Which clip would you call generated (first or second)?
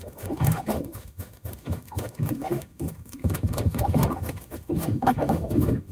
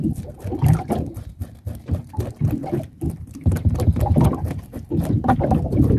first